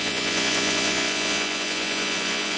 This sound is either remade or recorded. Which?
remade